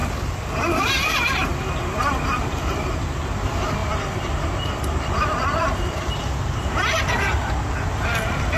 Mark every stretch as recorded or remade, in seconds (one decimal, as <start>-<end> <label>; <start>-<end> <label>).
0.0-3.8 recorded; 3.8-7.0 remade; 7.0-8.6 recorded